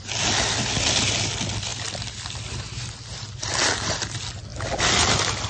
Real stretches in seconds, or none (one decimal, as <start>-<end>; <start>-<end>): 0.0-1.7; 3.1-5.5